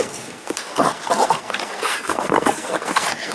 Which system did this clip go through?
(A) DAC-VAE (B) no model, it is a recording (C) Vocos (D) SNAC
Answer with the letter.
D